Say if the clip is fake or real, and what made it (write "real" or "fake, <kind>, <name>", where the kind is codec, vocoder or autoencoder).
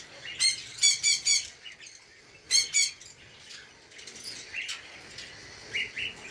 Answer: real